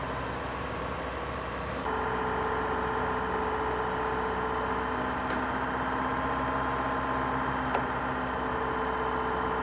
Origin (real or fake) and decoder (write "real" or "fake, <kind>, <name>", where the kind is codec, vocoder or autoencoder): real